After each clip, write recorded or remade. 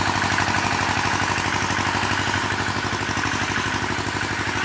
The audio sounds recorded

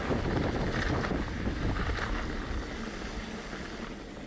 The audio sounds recorded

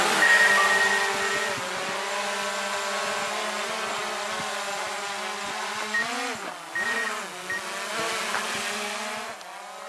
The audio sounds recorded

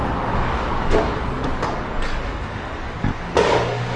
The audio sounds remade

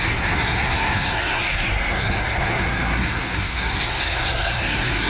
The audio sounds remade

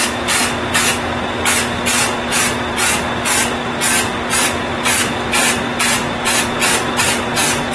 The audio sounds remade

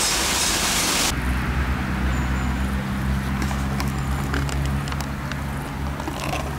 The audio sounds recorded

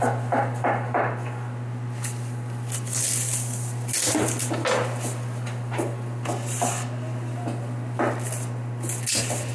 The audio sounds recorded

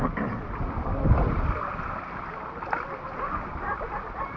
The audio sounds recorded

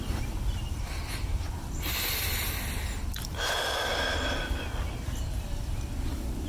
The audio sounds recorded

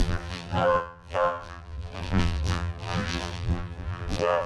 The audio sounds remade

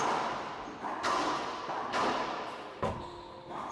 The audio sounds recorded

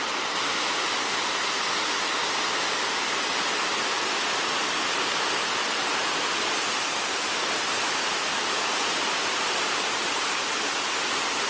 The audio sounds recorded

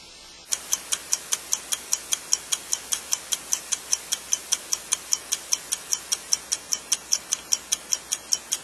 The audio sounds recorded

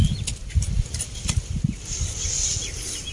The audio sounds recorded